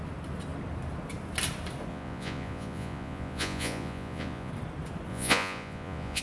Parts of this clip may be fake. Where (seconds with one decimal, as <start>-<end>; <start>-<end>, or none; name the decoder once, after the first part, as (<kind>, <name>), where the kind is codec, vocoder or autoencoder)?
1.9-4.5 (vocoder, Vocos); 5.1-6.2